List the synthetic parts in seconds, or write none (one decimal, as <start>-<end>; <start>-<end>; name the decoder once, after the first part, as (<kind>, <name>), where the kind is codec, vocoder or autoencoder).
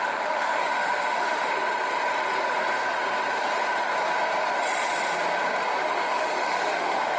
0.0-1.6 (autoencoder, DAC-VAE); 5.8-7.2